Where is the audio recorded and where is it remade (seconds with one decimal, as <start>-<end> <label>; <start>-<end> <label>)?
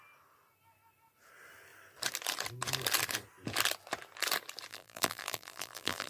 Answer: 0.0-4.7 recorded; 4.7-6.1 remade